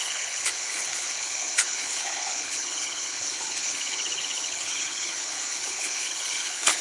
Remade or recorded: remade